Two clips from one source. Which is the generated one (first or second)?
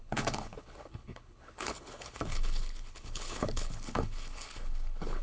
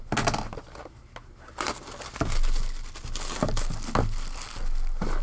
first